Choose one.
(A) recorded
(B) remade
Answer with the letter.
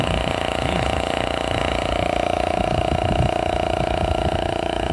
B